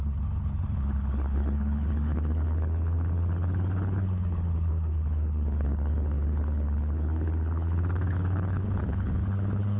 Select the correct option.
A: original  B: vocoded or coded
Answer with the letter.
B